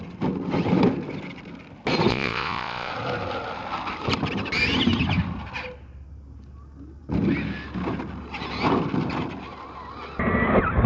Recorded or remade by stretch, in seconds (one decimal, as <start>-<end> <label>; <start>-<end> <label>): 0.0-2.1 recorded; 2.1-2.9 remade; 2.9-10.9 recorded